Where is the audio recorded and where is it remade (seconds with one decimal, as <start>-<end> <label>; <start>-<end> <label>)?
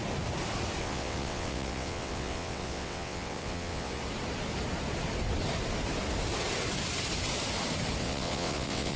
0.0-0.8 recorded; 0.8-4.0 remade; 4.0-8.0 recorded; 8.0-9.0 remade